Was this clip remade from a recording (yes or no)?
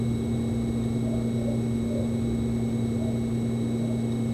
no